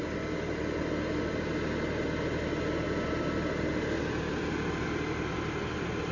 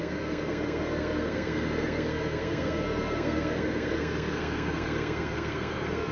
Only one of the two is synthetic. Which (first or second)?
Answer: second